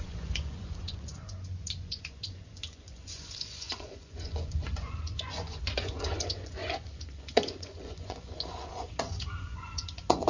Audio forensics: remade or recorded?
remade